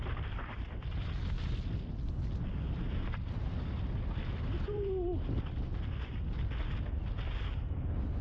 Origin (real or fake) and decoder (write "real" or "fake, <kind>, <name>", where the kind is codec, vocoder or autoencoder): real